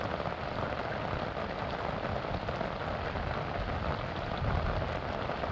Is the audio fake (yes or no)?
no